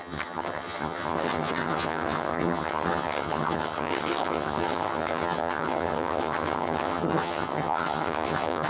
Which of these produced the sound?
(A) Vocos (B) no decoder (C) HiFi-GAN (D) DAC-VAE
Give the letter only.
C